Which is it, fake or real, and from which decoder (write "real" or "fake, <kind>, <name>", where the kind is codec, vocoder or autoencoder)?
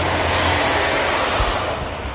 real